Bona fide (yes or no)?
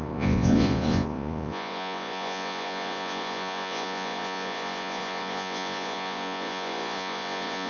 no